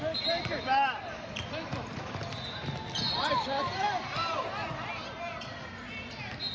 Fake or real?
real